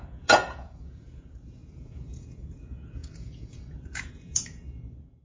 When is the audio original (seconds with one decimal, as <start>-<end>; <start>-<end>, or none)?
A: none